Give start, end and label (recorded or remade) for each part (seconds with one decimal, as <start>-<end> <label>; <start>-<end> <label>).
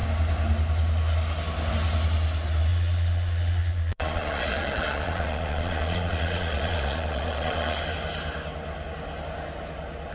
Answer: 0.0-2.7 recorded; 2.7-7.8 remade; 7.8-10.1 recorded